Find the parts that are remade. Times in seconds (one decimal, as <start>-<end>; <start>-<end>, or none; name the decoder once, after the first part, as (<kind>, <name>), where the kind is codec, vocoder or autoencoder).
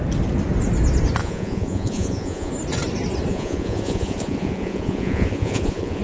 1.2-2.5 (vocoder, Vocos); 3.3-6.0